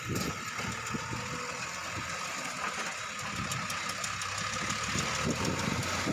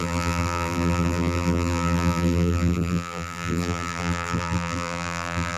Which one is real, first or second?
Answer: first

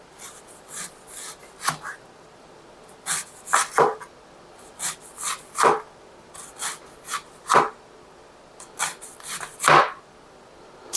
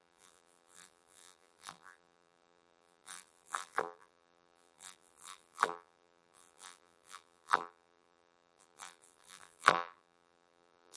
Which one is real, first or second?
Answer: first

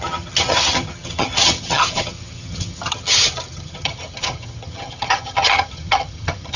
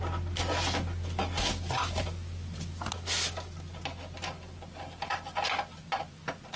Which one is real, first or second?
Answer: second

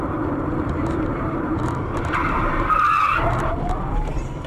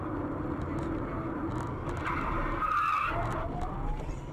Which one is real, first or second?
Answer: second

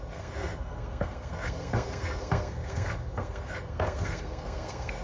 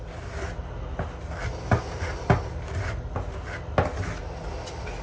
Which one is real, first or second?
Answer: second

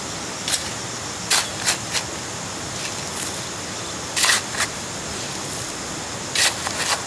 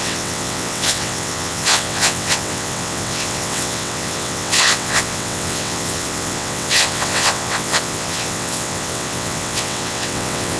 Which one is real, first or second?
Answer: first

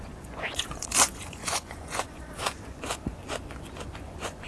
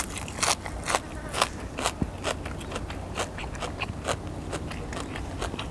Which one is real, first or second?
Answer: second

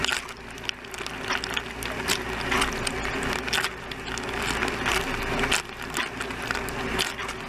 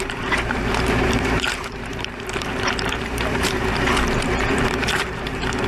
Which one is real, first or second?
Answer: first